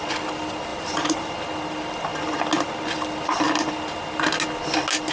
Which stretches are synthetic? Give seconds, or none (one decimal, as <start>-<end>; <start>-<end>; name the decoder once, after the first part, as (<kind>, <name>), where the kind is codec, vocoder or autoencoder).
0.7-1.3 (vocoder, BigVGAN v2)